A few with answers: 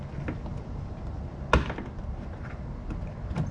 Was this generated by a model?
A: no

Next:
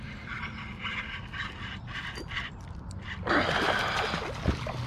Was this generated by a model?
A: no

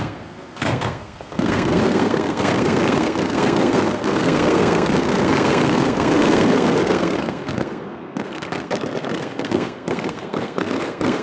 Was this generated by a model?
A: yes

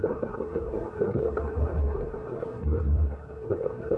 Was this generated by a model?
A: yes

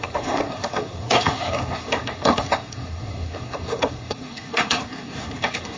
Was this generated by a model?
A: yes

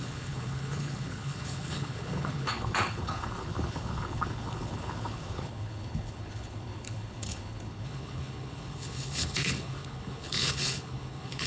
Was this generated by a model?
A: yes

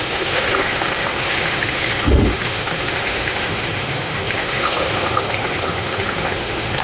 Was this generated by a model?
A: yes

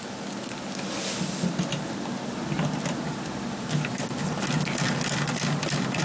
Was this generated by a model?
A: no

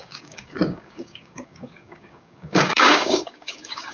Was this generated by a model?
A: yes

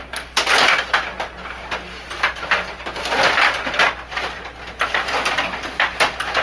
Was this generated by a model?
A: no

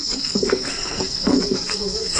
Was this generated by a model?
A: yes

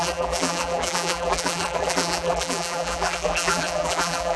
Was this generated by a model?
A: yes